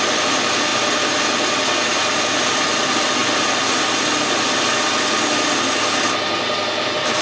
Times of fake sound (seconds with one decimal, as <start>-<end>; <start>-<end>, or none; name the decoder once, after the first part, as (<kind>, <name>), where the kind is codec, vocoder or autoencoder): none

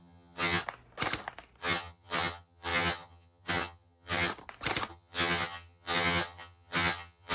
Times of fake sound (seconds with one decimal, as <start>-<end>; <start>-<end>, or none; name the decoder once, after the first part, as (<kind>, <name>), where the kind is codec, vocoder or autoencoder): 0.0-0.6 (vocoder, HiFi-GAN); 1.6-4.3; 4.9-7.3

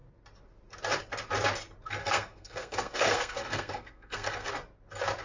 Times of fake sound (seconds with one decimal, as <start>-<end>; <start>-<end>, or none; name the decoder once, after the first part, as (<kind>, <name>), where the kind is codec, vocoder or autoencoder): 2.0-4.5 (codec, SNAC)